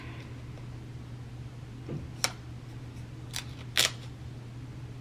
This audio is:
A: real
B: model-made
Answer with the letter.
A